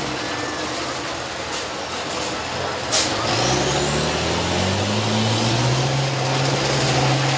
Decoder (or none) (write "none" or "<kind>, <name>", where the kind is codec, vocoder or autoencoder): none